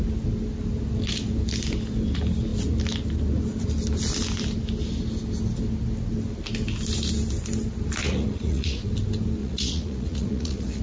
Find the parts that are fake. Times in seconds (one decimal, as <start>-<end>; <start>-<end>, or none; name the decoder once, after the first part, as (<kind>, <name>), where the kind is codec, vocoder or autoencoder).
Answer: 8.0-8.9 (vocoder, Vocos); 9.4-10.8